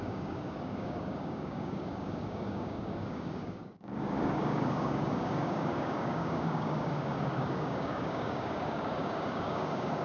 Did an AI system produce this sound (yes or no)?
yes